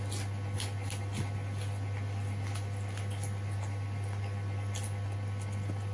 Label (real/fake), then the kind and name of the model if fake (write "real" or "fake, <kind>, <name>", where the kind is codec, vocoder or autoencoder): real